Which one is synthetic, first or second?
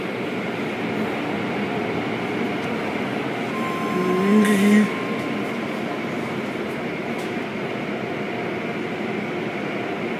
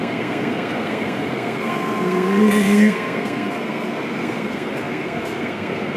second